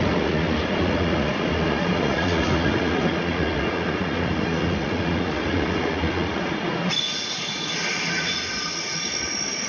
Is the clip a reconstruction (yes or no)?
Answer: yes